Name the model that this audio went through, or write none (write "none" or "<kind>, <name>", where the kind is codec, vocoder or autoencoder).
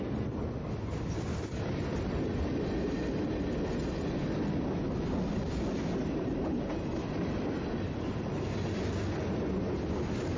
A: none